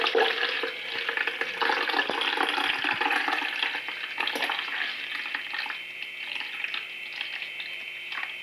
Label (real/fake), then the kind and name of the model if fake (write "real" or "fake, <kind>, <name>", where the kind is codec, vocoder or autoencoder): real